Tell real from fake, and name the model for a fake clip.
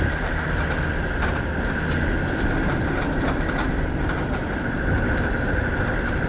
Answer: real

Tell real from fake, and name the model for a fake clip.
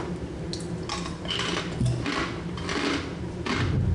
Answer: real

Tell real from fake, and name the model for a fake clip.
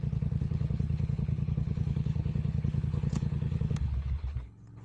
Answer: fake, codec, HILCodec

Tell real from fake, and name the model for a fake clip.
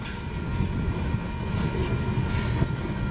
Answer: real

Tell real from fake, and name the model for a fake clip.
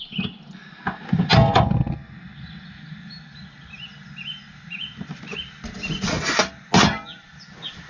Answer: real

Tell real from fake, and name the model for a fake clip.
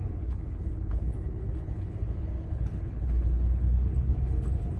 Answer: fake, codec, HILCodec